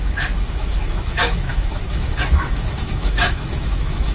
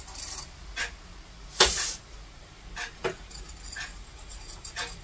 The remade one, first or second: first